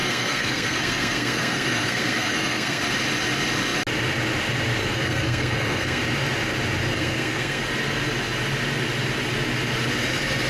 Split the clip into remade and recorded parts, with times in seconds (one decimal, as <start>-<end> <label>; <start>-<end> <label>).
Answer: 0.0-2.8 remade; 2.8-4.8 recorded; 4.8-6.0 remade; 6.0-6.9 recorded; 6.9-7.6 remade; 7.6-10.5 recorded